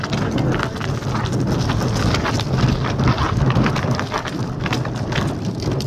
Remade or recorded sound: recorded